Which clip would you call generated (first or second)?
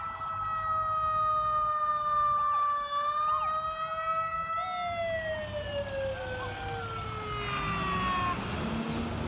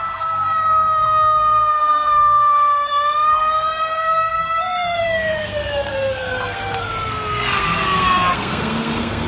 second